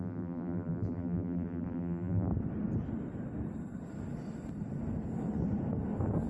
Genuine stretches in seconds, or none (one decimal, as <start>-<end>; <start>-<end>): 2.3-6.3